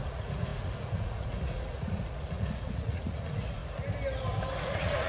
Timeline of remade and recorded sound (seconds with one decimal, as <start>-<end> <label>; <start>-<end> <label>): 0.0-3.6 remade; 3.6-4.6 recorded; 4.6-5.1 remade